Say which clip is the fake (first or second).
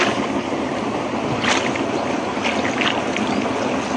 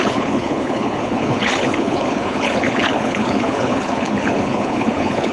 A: second